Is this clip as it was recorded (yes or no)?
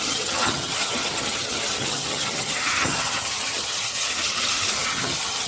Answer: no